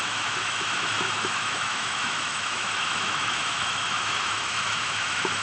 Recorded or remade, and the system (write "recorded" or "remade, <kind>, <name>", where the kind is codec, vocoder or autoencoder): remade, autoencoder, DAC-VAE